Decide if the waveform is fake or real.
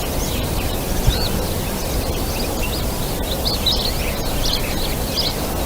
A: real